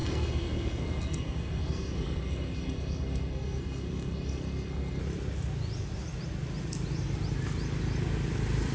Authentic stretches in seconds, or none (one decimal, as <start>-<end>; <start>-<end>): 5.0-8.7